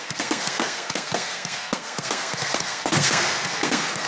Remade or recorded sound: remade